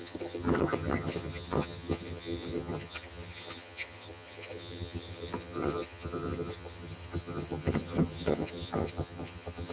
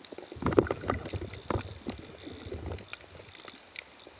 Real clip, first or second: second